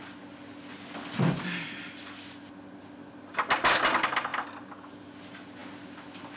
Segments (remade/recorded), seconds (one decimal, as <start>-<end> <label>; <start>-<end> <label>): 0.0-6.4 recorded